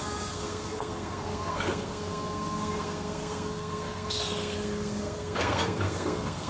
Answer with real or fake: fake